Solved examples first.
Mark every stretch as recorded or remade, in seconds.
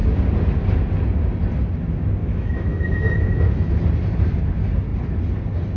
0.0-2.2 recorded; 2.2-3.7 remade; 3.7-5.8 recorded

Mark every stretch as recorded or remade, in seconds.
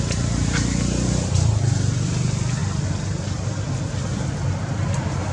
0.0-5.3 recorded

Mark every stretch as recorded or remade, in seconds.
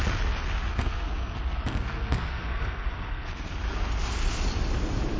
0.0-0.7 recorded; 0.7-3.5 remade; 3.5-5.2 recorded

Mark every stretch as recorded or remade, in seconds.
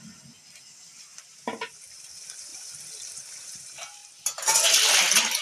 0.0-1.1 recorded; 1.1-2.0 remade; 2.0-2.5 recorded; 2.5-3.1 remade; 3.1-5.4 recorded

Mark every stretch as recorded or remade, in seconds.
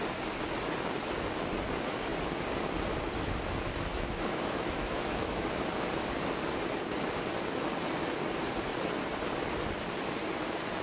0.0-3.9 recorded; 3.9-5.5 remade; 5.5-10.8 recorded